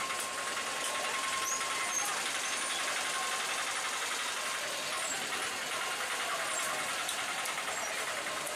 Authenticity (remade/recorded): recorded